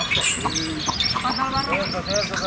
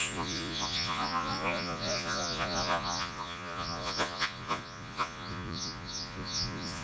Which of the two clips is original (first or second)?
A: first